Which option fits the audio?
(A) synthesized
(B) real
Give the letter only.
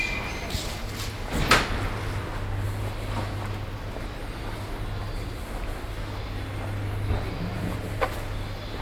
B